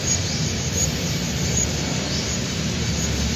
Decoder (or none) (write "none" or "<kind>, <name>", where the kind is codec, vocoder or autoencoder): vocoder, BigVGAN v2